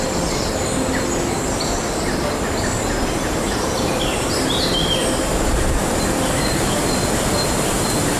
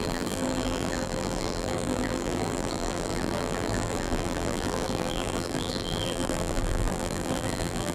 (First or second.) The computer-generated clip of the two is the second